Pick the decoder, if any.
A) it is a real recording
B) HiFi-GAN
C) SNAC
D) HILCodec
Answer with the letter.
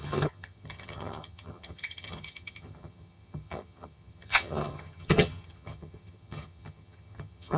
B